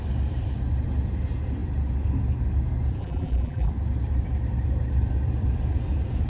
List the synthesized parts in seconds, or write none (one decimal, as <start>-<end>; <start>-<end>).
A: 3.0-3.7

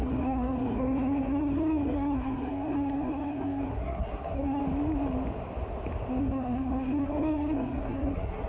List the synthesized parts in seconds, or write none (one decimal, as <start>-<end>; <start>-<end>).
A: 0.0-4.6; 6.2-8.5

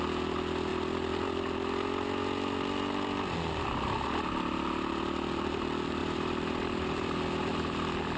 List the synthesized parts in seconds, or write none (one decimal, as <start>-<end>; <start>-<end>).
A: 6.0-8.2

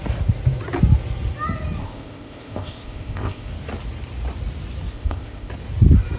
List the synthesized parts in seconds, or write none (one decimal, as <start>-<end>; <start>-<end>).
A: 1.8-3.5; 4.9-5.5

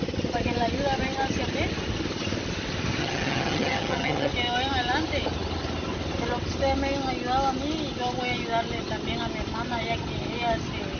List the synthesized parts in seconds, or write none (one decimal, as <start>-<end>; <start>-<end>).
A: 3.0-4.3

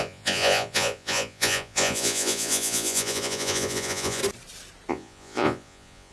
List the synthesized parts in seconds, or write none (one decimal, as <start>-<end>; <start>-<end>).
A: 0.0-4.2; 4.9-6.1

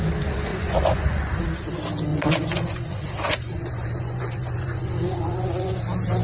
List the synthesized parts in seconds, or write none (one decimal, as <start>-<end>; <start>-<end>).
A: 0.5-1.4; 2.1-5.8

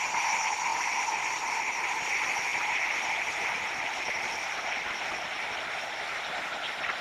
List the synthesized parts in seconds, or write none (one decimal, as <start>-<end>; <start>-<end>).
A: 0.7-2.0; 2.5-4.9